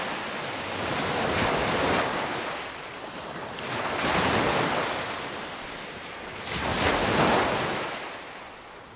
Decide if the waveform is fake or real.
real